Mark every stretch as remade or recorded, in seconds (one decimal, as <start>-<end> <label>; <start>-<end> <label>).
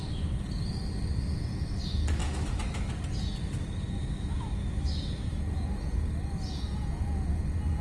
0.0-2.2 recorded; 2.2-2.9 remade; 2.9-4.0 recorded; 4.0-5.4 remade; 5.4-7.8 recorded